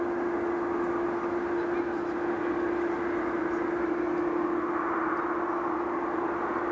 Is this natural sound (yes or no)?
yes